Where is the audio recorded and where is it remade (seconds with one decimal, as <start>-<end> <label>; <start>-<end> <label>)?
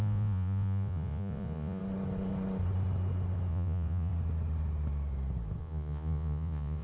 0.0-1.8 remade; 1.8-3.5 recorded; 3.5-4.1 remade; 4.1-5.6 recorded; 5.6-6.8 remade